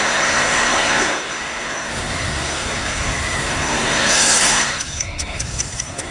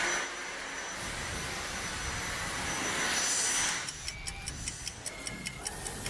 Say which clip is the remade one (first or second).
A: first